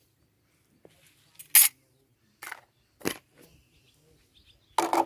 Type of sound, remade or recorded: recorded